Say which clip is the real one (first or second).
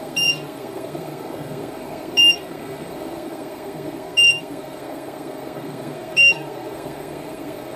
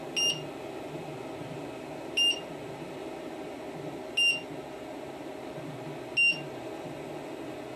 second